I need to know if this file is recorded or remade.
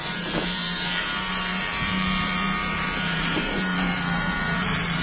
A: remade